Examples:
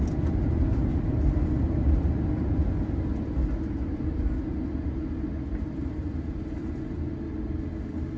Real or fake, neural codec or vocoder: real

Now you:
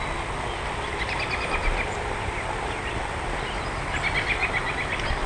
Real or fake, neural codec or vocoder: real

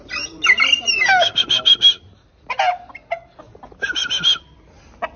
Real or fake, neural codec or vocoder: real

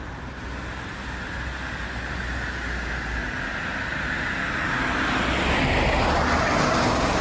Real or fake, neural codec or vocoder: real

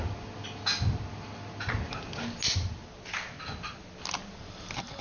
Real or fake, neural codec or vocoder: real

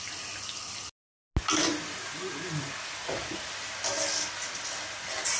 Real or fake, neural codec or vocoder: real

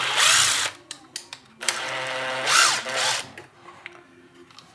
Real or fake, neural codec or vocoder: real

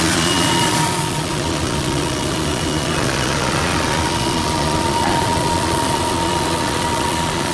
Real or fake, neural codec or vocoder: fake, vocoder, Vocos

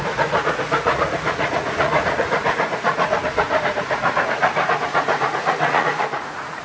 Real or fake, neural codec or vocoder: fake, vocoder, Vocos